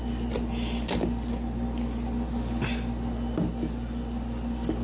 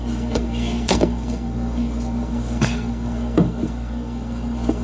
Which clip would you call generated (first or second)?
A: second